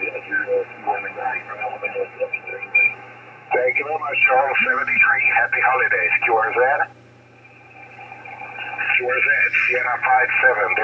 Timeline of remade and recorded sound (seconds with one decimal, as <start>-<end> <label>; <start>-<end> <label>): 0.0-2.5 recorded; 2.5-5.2 remade; 5.2-10.8 recorded